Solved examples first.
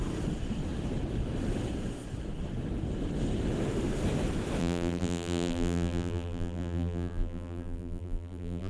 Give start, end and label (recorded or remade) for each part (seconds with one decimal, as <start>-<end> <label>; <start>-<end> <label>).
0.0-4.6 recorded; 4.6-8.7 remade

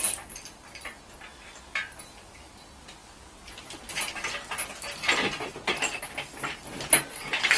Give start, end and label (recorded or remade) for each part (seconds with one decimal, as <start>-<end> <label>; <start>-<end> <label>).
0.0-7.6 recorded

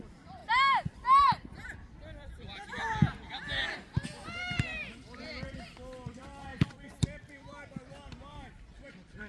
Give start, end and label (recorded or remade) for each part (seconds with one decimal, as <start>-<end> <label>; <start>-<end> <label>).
0.0-0.4 remade; 0.4-1.2 recorded; 1.2-4.8 remade; 4.8-5.3 recorded; 5.3-9.3 remade